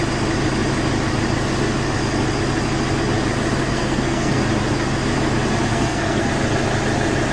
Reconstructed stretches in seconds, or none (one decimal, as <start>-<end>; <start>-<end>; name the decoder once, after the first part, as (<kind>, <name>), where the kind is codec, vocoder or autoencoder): 3.6-4.4 (codec, SNAC); 5.7-6.3

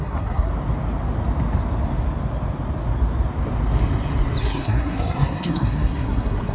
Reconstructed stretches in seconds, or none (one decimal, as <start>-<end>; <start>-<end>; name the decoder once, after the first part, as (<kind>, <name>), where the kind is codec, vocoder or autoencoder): 0.0-0.5 (codec, SNAC); 4.4-6.5